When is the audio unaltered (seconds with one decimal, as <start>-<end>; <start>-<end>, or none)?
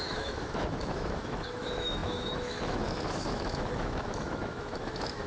none